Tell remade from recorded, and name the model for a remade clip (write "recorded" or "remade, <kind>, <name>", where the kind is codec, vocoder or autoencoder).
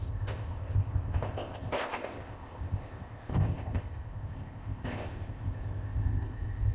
remade, codec, ZipCodec